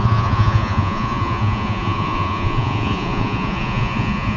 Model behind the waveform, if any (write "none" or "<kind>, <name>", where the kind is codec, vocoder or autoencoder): vocoder, Vocos